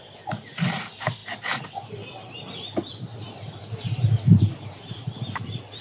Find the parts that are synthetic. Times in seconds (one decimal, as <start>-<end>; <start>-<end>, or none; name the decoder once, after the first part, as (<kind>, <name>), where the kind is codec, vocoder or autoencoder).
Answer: none